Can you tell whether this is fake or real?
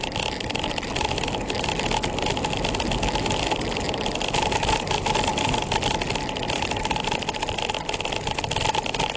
real